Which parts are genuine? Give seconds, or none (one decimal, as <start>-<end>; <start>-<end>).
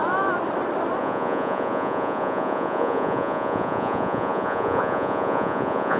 0.0-1.0